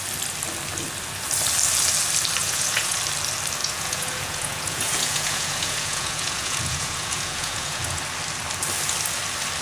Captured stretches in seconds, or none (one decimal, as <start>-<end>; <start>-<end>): 0.0-2.4; 3.0-3.6; 8.0-9.6